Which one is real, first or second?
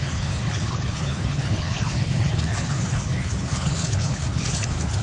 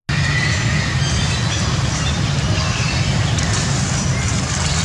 second